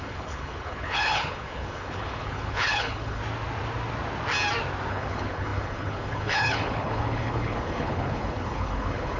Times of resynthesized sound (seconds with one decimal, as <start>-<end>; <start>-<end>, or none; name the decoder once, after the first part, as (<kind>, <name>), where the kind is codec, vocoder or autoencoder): 0.0-3.2 (codec, HILCodec); 4.9-9.2